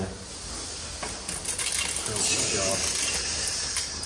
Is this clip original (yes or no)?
yes